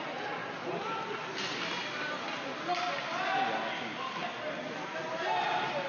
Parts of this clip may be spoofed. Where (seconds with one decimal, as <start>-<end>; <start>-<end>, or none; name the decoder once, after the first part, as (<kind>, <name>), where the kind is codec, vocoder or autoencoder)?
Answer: none